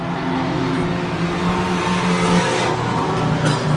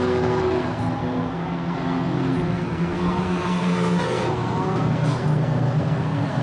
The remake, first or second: second